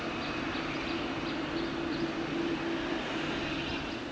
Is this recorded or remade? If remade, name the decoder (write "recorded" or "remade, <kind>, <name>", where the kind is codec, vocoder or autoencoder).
recorded